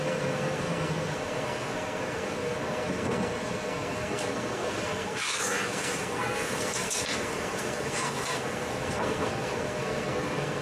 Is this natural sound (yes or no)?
no